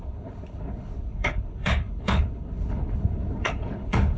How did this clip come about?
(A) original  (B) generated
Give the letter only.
B